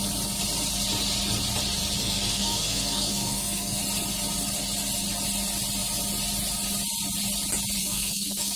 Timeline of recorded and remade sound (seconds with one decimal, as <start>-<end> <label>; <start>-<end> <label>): 0.0-2.0 recorded; 2.0-3.8 remade; 3.8-7.8 recorded; 7.8-8.6 remade